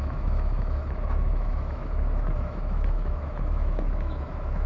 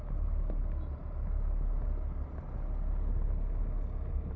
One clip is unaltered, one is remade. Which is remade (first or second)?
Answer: first